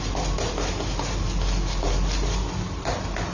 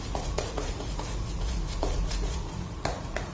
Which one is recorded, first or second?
first